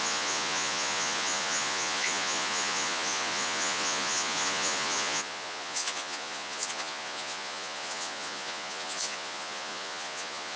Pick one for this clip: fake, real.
fake